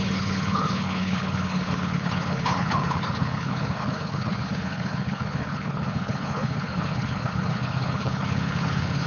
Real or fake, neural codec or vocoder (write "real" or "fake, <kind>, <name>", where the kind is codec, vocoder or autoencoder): fake, codec, HILCodec